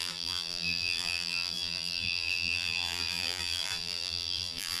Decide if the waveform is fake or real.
fake